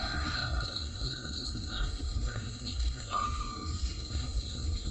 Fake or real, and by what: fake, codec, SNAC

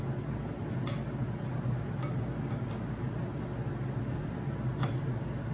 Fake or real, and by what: real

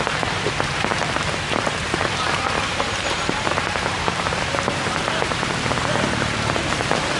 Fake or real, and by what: fake, vocoder, BigVGAN v2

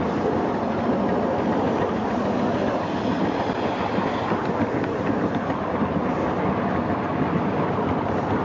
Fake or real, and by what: real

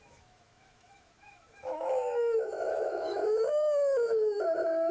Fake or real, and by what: fake, autoencoder, DAC-VAE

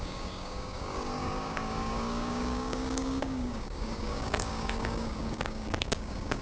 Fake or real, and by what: fake, codec, DAC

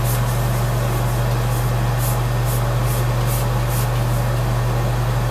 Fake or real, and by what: real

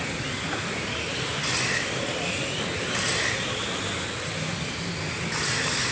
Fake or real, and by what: real